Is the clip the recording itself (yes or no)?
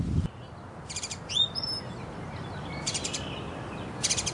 yes